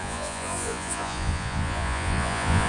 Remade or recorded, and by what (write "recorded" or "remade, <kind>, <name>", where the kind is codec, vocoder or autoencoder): remade, vocoder, Vocos